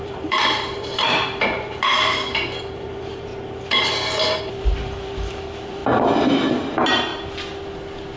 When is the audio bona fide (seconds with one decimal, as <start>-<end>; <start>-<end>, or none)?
2.1-2.6; 3.3-4.4; 5.8-6.5; 7.1-8.2